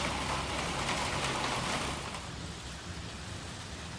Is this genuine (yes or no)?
no